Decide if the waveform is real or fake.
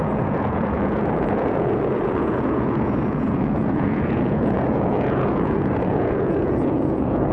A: fake